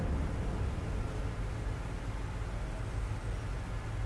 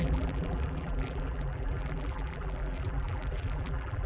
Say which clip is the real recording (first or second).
first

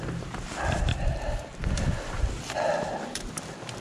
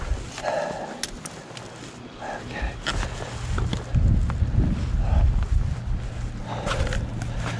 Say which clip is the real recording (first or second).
second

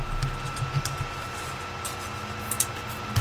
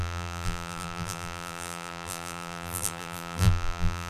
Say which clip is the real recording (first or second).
first